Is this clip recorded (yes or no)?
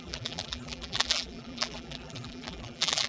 no